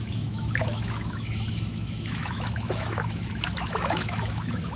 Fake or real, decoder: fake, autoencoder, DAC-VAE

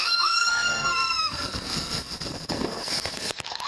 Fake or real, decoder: fake, codec, SNAC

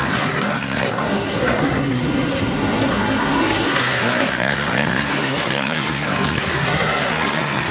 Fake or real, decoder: fake, codec, SNAC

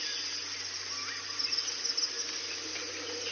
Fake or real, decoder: real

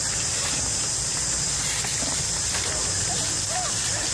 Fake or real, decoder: real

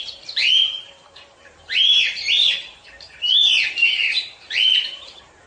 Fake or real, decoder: fake, vocoder, BigVGAN v2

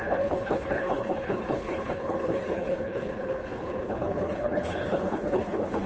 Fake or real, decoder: fake, codec, HILCodec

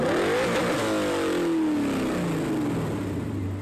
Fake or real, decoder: real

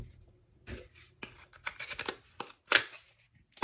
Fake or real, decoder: real